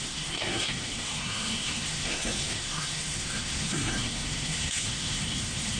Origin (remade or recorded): remade